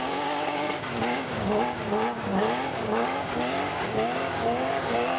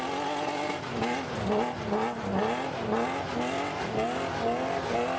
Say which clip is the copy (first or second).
first